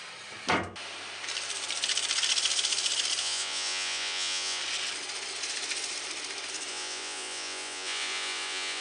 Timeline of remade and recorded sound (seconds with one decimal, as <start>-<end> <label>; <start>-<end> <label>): 0.0-3.2 recorded; 3.2-4.6 remade; 4.6-6.7 recorded; 6.7-8.8 remade

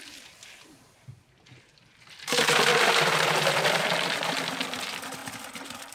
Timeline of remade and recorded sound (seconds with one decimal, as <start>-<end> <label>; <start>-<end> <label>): 0.0-2.7 recorded; 2.7-4.4 remade; 4.4-5.9 recorded

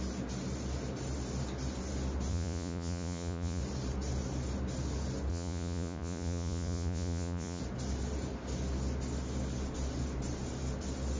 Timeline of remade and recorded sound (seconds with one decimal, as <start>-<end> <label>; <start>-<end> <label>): 0.0-2.3 recorded; 2.3-3.6 remade; 3.6-5.3 recorded; 5.3-7.6 remade; 7.6-11.2 recorded

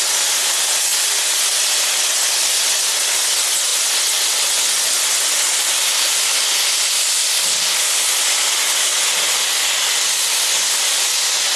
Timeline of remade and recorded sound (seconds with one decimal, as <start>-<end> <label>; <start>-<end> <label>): 0.0-11.6 recorded